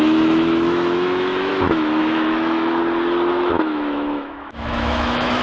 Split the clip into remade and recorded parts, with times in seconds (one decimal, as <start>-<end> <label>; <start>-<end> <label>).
0.0-2.8 remade; 2.8-3.3 recorded; 3.3-5.4 remade